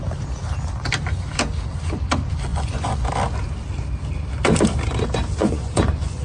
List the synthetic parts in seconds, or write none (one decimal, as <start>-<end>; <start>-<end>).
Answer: 2.5-3.1; 5.4-6.2